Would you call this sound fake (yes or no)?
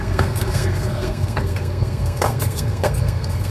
yes